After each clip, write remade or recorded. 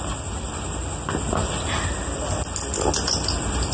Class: recorded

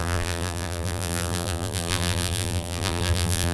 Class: remade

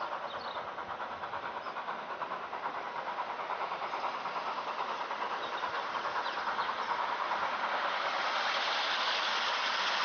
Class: recorded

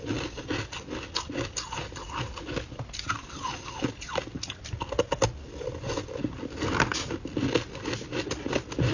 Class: recorded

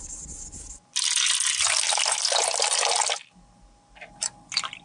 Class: recorded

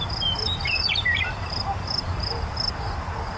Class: remade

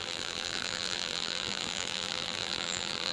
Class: remade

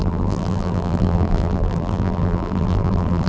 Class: remade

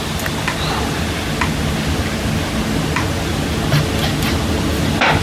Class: recorded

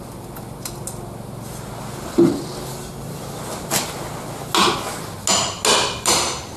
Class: recorded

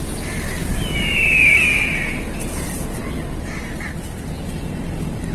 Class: recorded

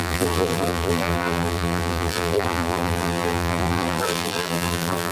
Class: remade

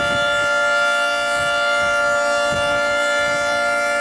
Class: recorded